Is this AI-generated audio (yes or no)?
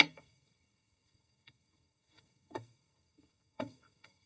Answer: yes